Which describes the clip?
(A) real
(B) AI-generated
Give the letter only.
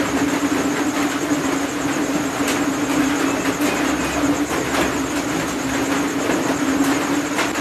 A